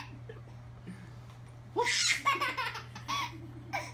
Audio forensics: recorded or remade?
recorded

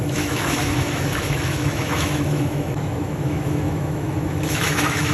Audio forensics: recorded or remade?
remade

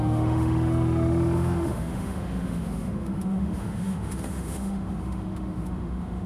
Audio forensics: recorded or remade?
remade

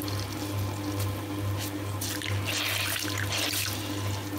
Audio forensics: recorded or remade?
recorded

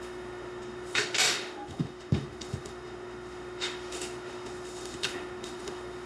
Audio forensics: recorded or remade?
remade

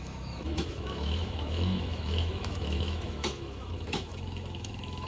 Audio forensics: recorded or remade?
remade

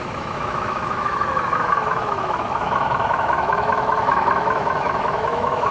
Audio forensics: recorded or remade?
remade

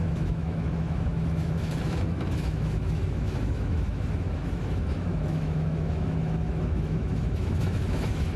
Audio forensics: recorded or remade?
remade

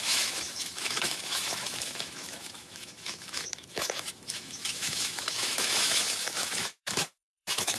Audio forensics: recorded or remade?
remade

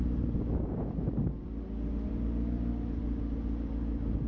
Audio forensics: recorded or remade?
recorded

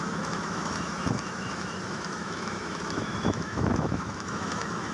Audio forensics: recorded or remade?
remade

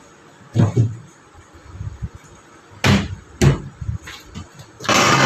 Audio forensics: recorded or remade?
recorded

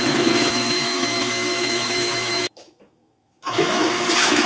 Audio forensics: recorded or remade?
remade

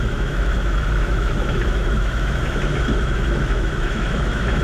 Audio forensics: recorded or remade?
remade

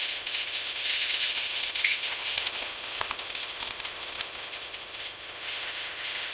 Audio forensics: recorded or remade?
remade